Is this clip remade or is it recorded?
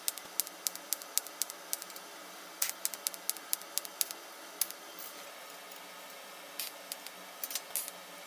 recorded